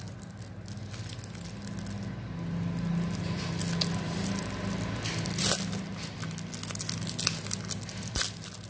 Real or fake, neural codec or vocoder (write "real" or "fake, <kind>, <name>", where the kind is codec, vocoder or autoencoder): real